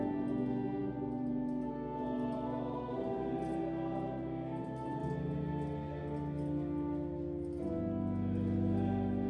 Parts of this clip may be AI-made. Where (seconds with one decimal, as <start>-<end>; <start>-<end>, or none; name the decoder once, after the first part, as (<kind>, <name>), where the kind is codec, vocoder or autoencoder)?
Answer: 0.0-3.6 (vocoder, BigVGAN v2); 4.6-5.0